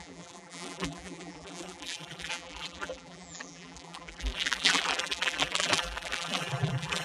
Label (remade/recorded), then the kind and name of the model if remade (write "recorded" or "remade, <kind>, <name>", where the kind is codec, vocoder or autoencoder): remade, vocoder, BigVGAN v2